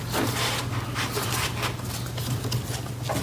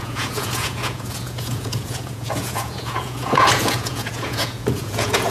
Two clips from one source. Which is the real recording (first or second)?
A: first